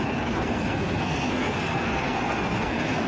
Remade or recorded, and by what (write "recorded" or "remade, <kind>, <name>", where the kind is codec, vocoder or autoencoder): remade, codec, SNAC